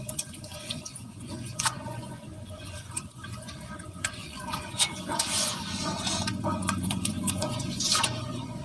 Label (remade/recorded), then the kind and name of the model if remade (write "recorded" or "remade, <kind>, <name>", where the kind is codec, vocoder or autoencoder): remade, vocoder, Vocos